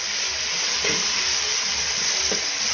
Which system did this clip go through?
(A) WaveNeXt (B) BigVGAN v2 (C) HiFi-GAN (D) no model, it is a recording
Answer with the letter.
B